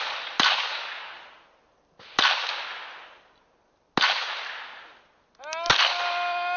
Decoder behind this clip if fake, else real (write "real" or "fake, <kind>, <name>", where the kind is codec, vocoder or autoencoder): real